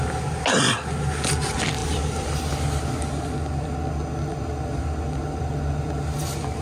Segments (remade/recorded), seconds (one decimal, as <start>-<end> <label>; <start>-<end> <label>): 0.0-6.6 recorded